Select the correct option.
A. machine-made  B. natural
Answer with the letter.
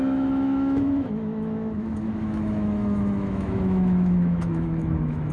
A